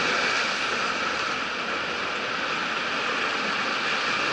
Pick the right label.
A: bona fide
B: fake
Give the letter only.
A